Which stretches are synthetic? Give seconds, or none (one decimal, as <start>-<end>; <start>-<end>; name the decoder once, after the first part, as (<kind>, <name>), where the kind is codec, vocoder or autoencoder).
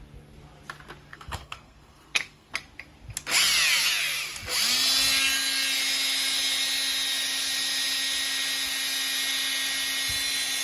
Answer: 1.1-2.5 (codec, SNAC)